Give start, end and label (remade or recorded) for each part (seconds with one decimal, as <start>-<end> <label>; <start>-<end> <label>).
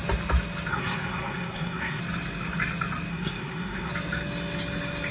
0.0-0.7 recorded; 0.7-2.0 remade; 2.0-3.1 recorded; 3.1-3.9 remade; 3.9-5.1 recorded